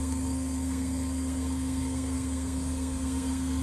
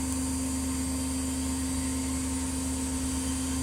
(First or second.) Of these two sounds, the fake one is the first